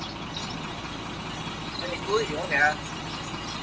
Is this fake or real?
real